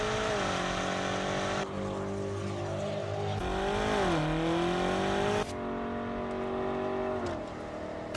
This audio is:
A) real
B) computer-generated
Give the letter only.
A